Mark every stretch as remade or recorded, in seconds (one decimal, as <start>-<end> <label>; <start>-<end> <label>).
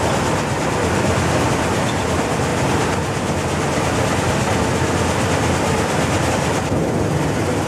0.0-7.7 recorded